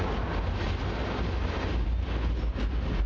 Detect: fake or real real